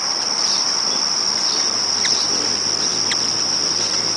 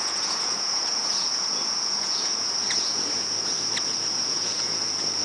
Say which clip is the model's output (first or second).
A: second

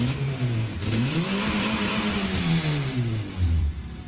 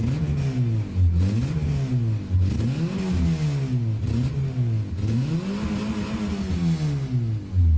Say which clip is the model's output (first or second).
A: first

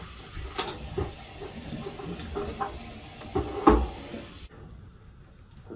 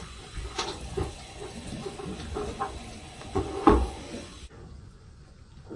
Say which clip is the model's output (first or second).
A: second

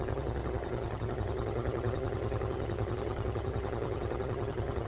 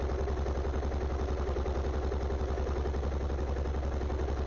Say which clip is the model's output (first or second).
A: first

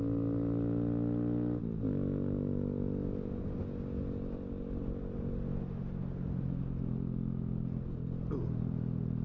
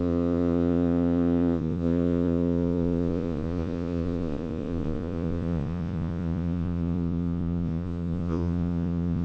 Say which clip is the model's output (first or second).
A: second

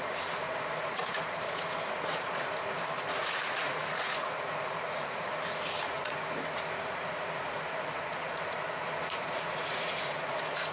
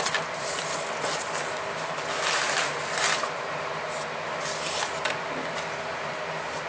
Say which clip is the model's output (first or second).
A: first